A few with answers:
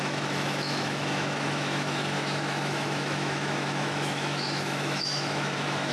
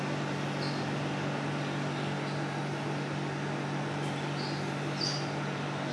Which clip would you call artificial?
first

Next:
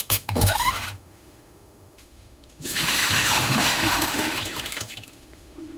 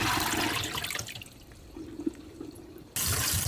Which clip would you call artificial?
first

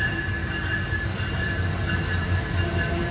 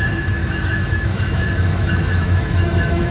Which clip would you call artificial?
second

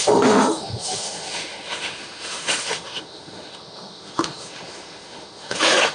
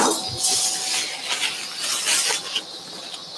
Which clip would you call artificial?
first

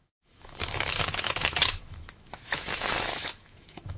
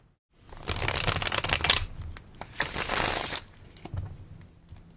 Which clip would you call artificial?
first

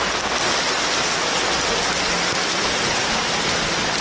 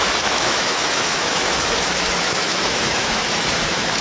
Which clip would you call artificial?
second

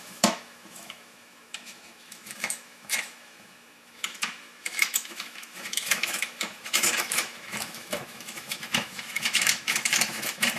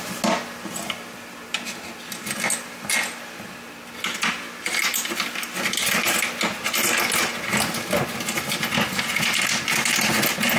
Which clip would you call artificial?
first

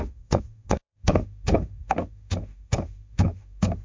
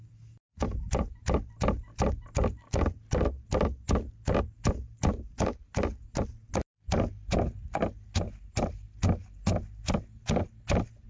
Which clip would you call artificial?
first